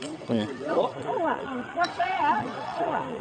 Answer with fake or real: fake